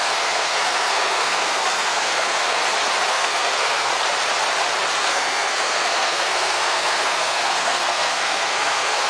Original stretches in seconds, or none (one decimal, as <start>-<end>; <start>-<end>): 2.6-3.1; 3.9-5.0